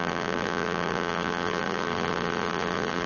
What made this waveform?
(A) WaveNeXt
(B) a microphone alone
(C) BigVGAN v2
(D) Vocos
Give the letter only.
C